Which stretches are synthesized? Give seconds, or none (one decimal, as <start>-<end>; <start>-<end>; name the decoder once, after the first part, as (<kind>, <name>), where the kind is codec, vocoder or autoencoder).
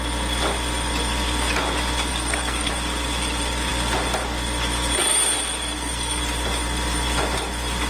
2.1-2.7 (codec, SNAC); 5.7-6.2